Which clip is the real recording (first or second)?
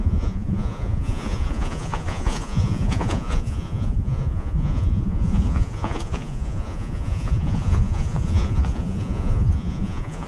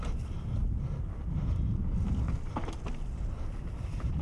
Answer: second